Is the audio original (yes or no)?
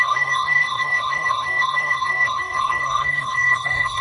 no